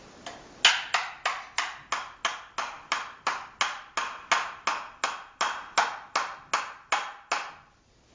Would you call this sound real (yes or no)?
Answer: yes